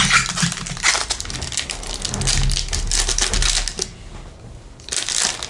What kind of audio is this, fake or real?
real